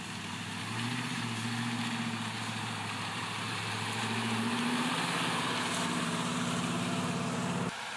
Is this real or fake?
fake